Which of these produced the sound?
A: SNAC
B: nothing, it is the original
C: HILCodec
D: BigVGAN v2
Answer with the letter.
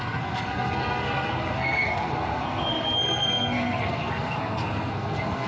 A